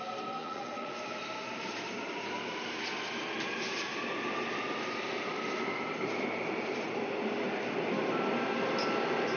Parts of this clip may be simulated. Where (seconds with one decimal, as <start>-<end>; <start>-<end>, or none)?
0.4-1.0